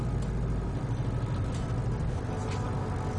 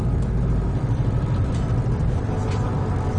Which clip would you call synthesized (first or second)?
second